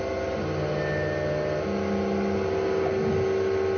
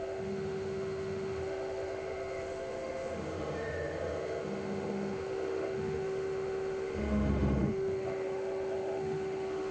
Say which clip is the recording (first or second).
first